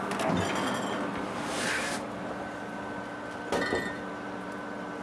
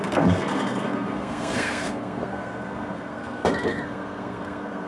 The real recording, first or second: first